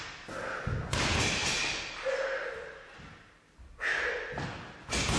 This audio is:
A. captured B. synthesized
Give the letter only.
A